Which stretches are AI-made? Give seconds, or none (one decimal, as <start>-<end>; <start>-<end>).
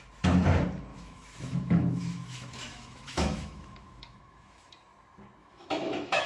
0.9-4.7; 5.4-6.3